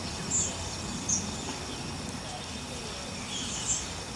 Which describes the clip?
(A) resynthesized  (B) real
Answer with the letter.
B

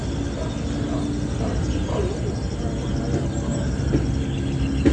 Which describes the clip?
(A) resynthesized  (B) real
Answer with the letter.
B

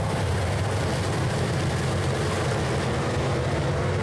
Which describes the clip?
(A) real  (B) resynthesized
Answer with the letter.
A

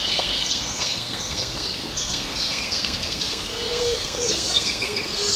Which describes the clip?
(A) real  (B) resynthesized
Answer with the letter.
B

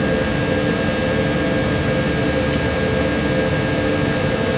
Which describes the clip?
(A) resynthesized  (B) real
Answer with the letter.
B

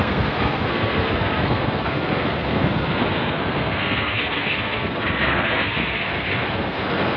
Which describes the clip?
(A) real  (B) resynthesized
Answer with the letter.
B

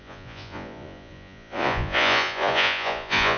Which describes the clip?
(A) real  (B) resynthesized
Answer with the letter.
B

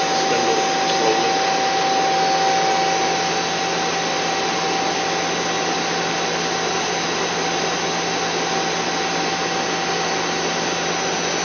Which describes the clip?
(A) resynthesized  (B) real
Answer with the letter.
B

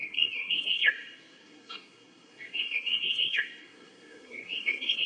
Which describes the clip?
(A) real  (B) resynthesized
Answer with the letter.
B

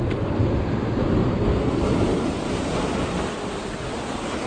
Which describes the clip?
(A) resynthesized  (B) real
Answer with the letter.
B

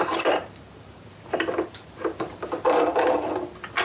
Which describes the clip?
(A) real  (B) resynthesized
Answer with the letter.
A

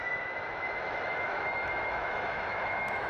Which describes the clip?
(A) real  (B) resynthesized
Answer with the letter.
B